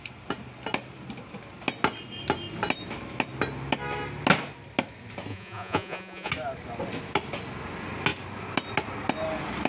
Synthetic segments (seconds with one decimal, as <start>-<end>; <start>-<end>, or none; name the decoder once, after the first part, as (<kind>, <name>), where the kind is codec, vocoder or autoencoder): 5.3-6.3 (vocoder, Vocos)